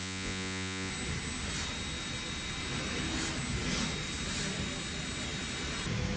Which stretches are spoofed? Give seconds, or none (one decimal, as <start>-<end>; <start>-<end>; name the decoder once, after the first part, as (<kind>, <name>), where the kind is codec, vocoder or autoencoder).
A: 0.0-0.9 (vocoder, Vocos)